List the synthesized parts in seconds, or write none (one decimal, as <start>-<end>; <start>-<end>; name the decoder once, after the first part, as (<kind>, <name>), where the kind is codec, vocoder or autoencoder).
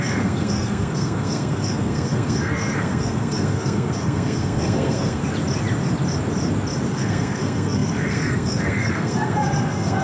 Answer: 0.0-5.2 (codec, SNAC); 6.9-10.0